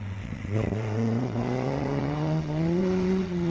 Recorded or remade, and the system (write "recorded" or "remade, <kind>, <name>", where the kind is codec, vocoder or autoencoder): remade, vocoder, WaveNeXt